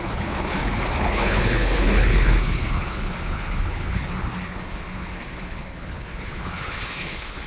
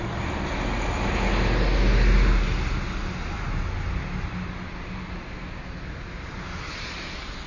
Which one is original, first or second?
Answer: second